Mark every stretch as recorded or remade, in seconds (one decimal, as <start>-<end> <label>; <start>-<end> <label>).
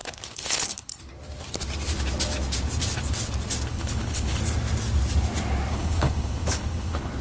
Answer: 0.0-1.0 remade; 1.0-3.7 recorded; 3.7-4.4 remade; 4.4-5.7 recorded; 5.7-7.2 remade